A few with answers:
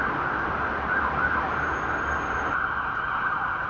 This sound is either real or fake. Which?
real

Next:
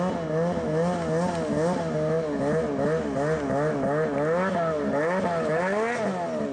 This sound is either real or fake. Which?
real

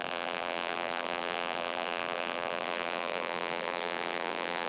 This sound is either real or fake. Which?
fake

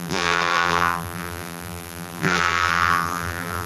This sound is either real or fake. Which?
fake